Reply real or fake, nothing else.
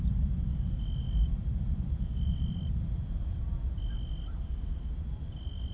real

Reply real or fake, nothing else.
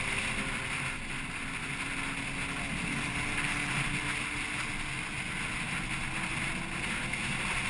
real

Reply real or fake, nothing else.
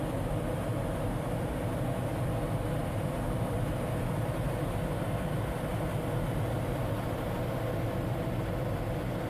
real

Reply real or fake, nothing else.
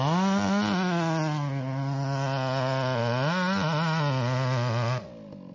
real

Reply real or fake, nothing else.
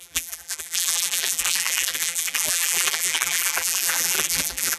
fake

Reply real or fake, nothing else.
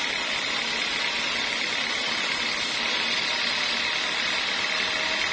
real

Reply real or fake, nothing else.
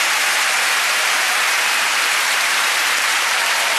fake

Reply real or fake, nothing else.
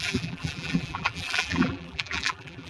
fake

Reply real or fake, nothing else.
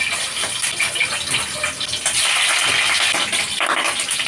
real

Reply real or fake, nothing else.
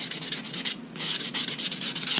real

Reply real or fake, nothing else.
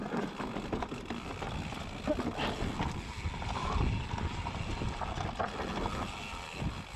real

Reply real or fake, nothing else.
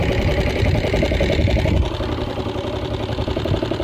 real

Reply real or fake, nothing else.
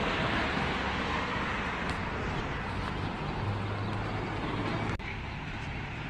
real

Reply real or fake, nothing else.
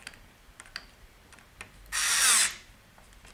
real